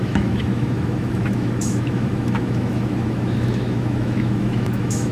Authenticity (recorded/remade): remade